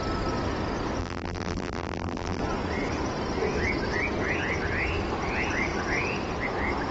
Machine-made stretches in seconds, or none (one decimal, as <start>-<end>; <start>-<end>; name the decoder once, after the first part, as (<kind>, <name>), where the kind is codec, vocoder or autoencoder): 1.0-2.4 (vocoder, BigVGAN v2)